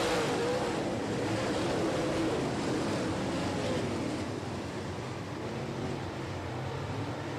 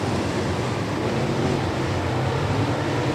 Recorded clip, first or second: first